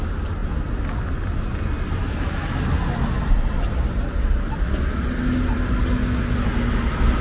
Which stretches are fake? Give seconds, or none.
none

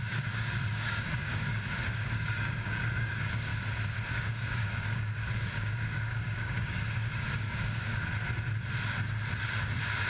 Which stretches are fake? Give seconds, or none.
0.0-3.5 (codec, DAC); 4.1-7.9